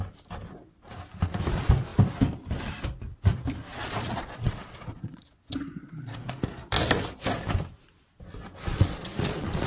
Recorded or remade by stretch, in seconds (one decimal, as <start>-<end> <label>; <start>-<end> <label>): 0.0-3.7 recorded; 3.7-6.3 remade; 6.3-8.7 recorded; 8.7-9.7 remade